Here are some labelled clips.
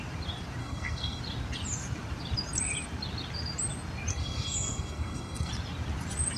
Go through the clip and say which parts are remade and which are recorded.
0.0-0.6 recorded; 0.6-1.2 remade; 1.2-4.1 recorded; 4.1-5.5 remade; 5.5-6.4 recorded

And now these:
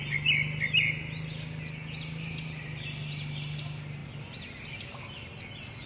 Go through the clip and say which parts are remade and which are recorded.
0.0-5.9 recorded

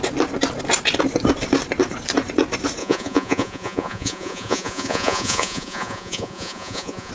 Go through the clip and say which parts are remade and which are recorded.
0.0-2.8 recorded; 2.8-7.1 remade

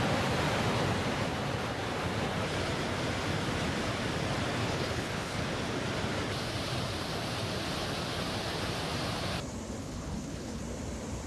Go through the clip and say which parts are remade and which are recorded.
0.0-4.6 recorded; 4.6-5.4 remade; 5.4-9.8 recorded; 9.8-10.6 remade; 10.6-11.3 recorded

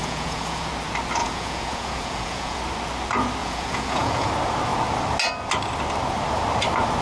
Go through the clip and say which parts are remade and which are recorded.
0.0-0.7 remade; 0.7-1.2 recorded; 1.2-2.6 remade; 2.6-3.4 recorded; 3.4-4.3 remade; 4.3-7.0 recorded

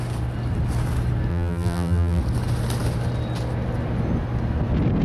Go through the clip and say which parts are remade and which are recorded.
0.0-1.3 recorded; 1.3-2.2 remade; 2.2-5.0 recorded